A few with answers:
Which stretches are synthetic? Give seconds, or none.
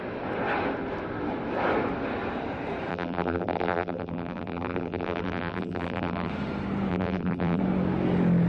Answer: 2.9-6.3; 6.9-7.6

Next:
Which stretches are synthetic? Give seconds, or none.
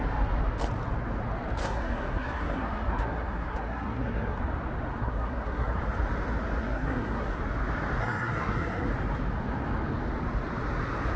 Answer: 1.6-4.4; 5.0-5.8; 6.6-7.4; 8.0-8.9